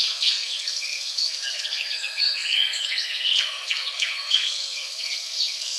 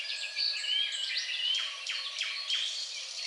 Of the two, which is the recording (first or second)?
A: second